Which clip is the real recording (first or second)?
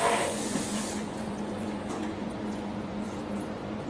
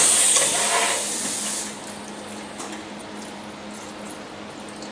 second